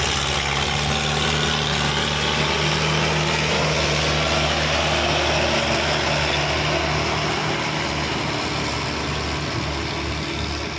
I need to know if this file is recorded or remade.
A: recorded